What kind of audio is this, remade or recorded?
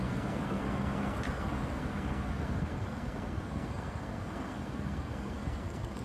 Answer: remade